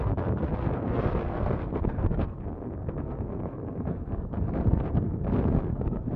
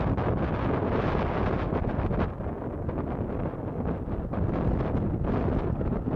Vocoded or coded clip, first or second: first